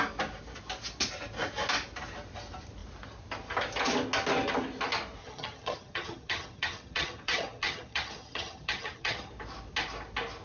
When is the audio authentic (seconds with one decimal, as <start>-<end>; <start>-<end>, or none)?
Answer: 0.0-5.2; 9.3-10.4